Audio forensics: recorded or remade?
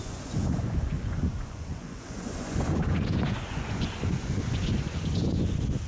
remade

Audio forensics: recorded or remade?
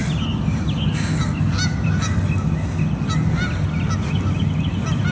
recorded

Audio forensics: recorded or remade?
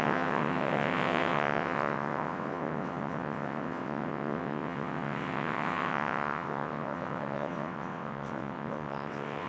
remade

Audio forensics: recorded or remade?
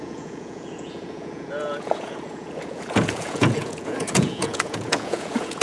remade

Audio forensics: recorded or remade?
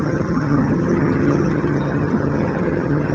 remade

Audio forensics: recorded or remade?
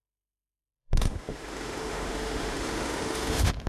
remade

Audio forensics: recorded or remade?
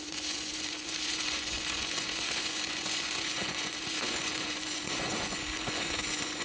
remade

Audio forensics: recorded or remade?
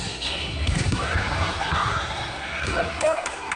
remade